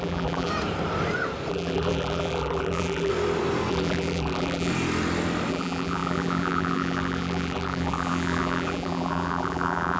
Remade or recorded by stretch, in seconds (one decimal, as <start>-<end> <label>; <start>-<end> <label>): 0.0-0.5 remade; 0.5-1.5 recorded; 1.5-3.1 remade; 3.1-3.7 recorded; 3.7-4.7 remade; 4.7-5.5 recorded; 5.5-10.0 remade